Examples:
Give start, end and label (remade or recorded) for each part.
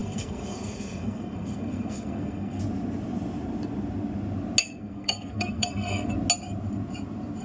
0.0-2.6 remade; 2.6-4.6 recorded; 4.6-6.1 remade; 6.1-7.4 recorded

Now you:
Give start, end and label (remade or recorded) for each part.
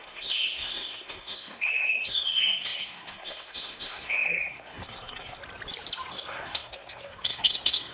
0.0-5.4 remade; 5.4-6.1 recorded; 6.1-7.9 remade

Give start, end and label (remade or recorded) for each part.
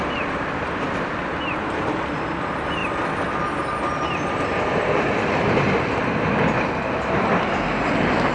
0.0-8.3 recorded